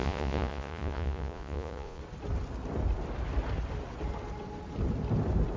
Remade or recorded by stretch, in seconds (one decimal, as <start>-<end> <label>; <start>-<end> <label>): 0.0-2.0 remade; 2.0-5.6 recorded